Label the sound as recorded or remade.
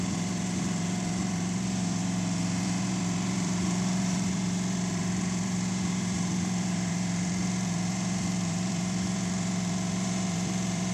remade